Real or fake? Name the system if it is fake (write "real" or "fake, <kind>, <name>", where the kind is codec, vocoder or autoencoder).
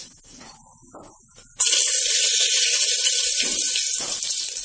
real